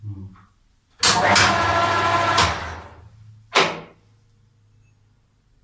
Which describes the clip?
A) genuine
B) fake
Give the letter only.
A